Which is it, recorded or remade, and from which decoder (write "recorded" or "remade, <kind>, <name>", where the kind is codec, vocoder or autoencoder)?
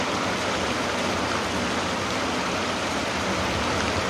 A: recorded